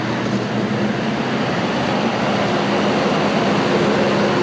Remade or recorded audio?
recorded